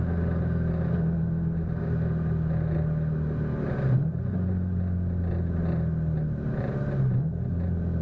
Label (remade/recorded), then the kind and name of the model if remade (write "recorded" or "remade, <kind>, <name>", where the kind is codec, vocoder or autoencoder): recorded